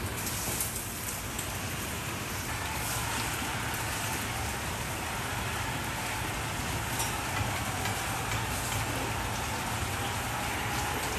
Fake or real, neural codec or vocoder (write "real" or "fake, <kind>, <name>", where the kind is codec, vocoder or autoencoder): real